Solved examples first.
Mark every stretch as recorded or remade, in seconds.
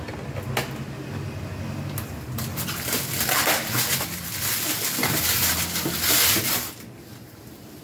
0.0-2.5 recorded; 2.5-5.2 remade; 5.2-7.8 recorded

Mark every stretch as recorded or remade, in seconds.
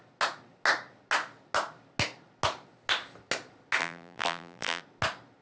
0.0-3.8 recorded; 3.8-4.8 remade; 4.8-5.4 recorded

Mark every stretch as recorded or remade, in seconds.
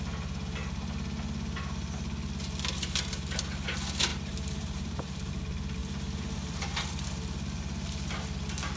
0.0-4.1 recorded; 4.1-5.3 remade; 5.3-5.8 recorded; 5.8-6.9 remade; 6.9-8.8 recorded